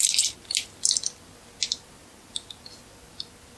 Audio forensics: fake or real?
real